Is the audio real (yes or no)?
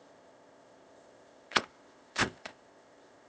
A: no